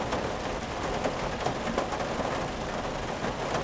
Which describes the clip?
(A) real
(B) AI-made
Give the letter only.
A